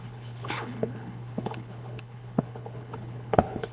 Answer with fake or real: fake